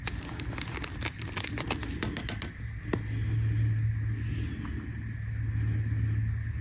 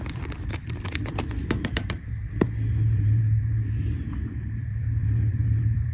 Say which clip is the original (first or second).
first